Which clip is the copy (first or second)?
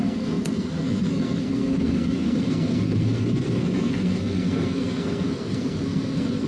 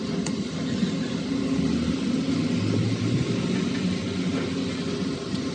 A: first